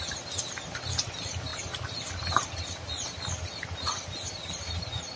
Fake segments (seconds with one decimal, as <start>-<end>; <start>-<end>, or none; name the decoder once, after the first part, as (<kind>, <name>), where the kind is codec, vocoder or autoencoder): none